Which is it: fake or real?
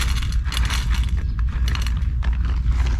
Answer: real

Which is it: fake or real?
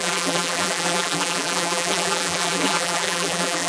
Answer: fake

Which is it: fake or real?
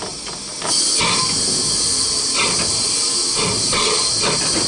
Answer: real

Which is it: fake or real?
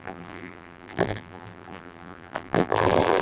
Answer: fake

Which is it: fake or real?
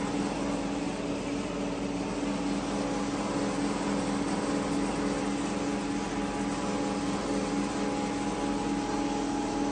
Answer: real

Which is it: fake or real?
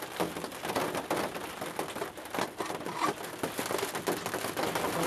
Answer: real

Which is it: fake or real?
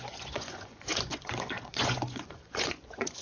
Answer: fake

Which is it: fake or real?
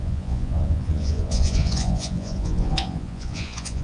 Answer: fake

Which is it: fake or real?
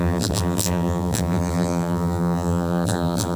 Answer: fake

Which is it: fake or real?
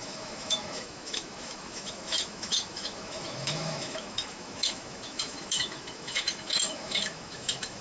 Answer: fake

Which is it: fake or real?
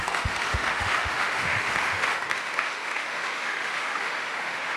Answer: fake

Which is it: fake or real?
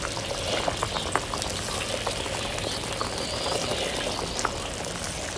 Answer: real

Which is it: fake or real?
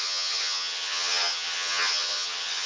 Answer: fake